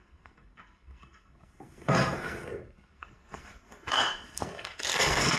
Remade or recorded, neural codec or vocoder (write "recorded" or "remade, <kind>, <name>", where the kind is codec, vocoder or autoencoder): remade, codec, SNAC